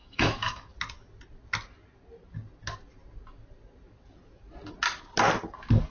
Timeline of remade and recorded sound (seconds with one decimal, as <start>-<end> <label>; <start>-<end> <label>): 0.0-0.7 remade; 0.7-5.9 recorded

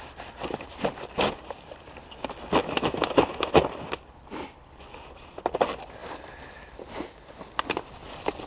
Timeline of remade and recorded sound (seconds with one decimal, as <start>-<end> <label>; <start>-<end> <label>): 0.0-2.6 recorded; 2.6-3.5 remade; 3.5-8.5 recorded